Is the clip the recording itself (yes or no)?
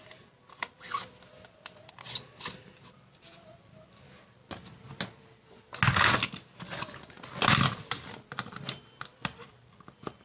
yes